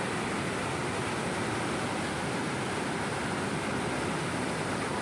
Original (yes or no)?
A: yes